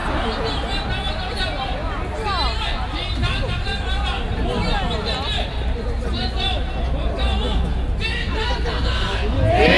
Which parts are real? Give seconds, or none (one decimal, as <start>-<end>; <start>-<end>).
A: 0.0-9.8